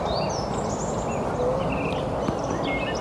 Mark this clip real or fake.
real